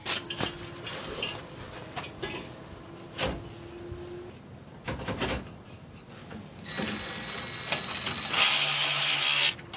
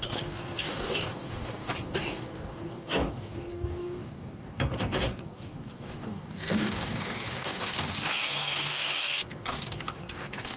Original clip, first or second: first